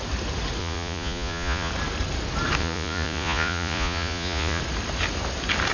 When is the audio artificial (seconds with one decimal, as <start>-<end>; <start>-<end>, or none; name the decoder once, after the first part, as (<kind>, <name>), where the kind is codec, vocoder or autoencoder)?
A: 0.6-1.7 (vocoder, Vocos); 2.6-4.6